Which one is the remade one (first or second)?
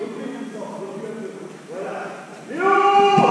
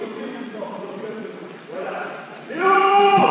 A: second